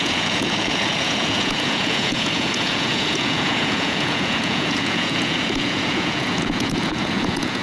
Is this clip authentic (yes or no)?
no